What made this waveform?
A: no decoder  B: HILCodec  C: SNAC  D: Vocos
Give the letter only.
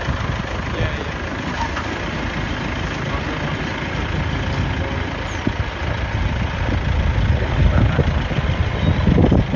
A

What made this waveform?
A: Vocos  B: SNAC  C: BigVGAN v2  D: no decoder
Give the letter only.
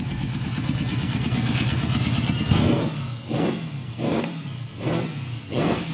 B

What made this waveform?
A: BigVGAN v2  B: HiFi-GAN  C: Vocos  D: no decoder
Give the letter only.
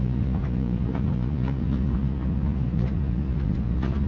C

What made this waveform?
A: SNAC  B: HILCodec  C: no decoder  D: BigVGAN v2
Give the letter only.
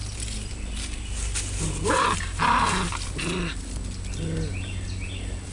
C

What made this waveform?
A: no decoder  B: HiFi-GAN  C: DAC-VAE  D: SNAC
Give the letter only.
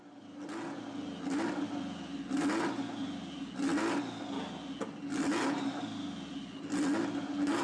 A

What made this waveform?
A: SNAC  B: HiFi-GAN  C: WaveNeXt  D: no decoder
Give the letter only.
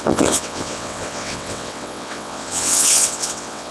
C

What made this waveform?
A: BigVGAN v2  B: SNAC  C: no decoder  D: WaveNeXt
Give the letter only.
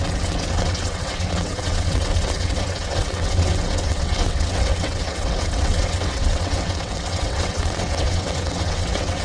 D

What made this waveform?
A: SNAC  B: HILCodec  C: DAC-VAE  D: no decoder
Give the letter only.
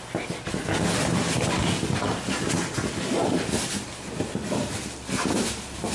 D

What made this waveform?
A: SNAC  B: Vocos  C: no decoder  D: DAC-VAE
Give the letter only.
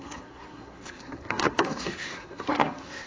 A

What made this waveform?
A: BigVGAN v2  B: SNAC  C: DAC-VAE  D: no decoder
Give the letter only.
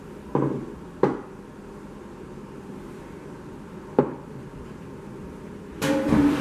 A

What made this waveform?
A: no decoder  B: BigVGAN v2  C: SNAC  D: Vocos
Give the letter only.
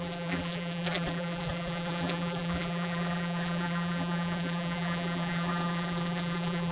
B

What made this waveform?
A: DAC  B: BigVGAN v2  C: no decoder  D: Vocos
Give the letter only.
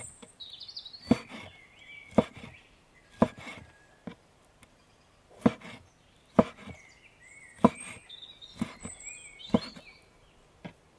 C